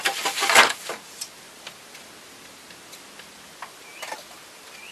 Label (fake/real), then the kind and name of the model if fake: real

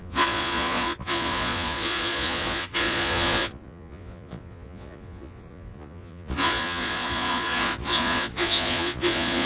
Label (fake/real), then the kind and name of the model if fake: fake, vocoder, Vocos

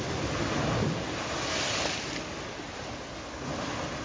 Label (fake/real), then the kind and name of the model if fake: real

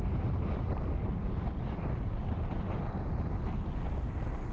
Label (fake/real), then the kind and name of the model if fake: real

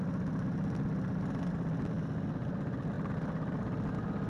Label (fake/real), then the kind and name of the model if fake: real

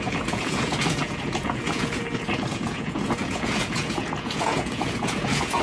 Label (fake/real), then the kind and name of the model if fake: fake, vocoder, Vocos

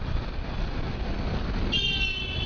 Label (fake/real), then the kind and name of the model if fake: real